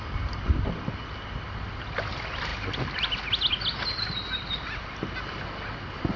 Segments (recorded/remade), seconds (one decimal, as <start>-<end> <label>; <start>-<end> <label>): 0.0-6.2 recorded